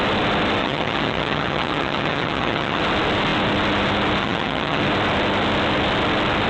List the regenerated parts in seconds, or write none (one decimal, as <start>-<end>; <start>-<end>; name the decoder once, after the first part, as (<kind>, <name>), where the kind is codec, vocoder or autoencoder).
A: 0.6-2.8 (vocoder, HiFi-GAN); 4.2-4.8

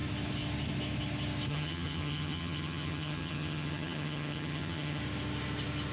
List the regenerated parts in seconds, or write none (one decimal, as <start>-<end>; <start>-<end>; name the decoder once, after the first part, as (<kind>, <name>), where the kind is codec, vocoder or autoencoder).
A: 1.5-5.0 (vocoder, HiFi-GAN)

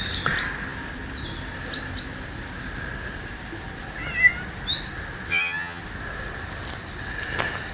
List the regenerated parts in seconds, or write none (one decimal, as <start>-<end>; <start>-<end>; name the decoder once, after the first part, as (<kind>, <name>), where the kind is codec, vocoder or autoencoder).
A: 5.3-5.8 (vocoder, HiFi-GAN)

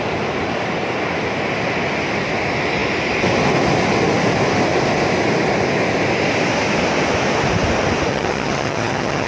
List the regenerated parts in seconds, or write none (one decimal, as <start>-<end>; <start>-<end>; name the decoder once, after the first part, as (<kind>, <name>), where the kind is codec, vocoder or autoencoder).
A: 8.1-9.3 (vocoder, HiFi-GAN)

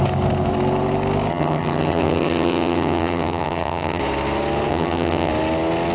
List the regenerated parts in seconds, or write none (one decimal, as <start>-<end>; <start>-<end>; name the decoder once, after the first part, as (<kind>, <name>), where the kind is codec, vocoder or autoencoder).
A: 1.3-4.0 (vocoder, HiFi-GAN); 4.7-5.3

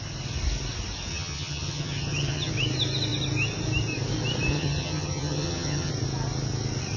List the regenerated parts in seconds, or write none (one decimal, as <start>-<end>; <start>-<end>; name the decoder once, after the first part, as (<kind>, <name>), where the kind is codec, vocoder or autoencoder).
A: 1.1-2.5 (vocoder, HiFi-GAN); 4.5-5.9

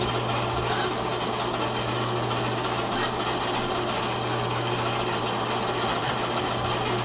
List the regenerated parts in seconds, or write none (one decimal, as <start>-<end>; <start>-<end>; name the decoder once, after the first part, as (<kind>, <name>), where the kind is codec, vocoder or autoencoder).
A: none

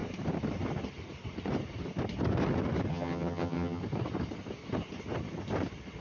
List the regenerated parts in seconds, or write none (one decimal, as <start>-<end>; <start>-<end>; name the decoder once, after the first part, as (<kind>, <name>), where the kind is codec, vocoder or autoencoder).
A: 2.9-3.8 (vocoder, HiFi-GAN)